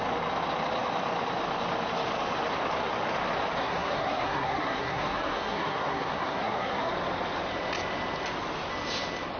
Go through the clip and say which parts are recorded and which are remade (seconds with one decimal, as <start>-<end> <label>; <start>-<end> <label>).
0.0-3.6 recorded; 3.6-6.9 remade; 6.9-9.4 recorded